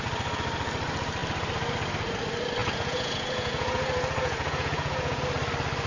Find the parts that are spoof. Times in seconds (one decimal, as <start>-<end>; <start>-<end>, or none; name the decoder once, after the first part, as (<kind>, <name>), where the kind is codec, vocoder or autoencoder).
2.6-5.2 (vocoder, Vocos)